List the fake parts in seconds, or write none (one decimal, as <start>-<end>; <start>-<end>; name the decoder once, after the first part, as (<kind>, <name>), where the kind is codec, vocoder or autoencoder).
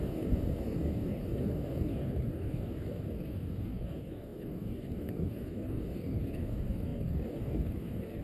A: 0.0-8.2 (codec, DAC)